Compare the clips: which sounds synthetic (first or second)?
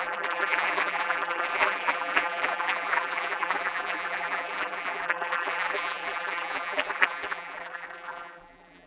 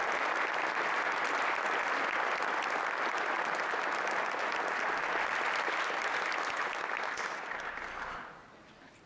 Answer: first